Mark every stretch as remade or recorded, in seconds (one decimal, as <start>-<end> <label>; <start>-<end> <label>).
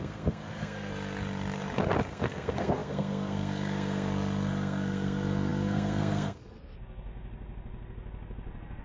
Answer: 0.0-0.9 remade; 0.9-2.1 recorded; 2.1-7.1 remade; 7.1-8.8 recorded